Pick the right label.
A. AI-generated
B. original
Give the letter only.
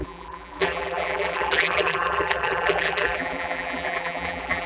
A